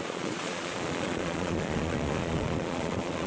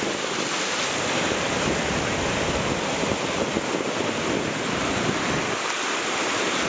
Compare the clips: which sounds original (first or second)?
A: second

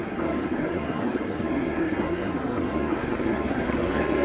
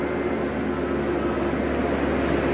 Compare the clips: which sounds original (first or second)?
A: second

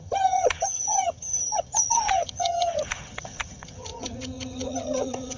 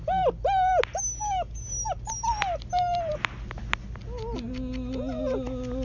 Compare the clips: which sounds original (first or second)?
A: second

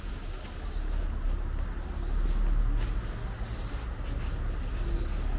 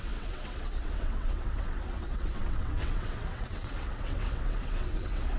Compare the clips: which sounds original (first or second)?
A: first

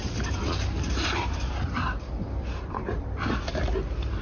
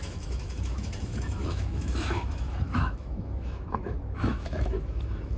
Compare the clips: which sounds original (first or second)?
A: first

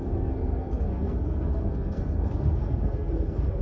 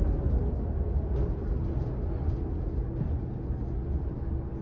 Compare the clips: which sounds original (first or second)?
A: second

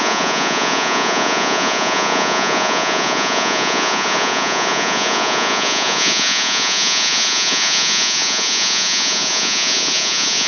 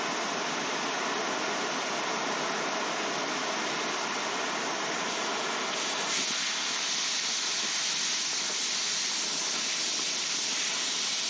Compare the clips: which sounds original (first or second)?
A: second